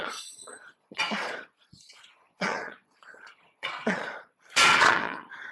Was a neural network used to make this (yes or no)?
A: yes